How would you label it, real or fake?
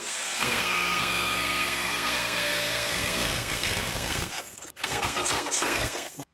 fake